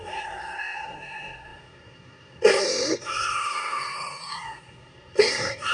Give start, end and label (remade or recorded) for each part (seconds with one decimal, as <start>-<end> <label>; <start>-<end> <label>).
0.0-5.7 remade